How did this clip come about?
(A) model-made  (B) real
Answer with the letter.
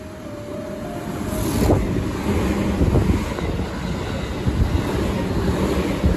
B